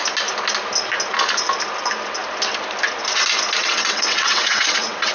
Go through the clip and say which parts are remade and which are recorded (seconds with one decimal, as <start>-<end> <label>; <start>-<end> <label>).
0.0-3.6 recorded; 3.6-5.1 remade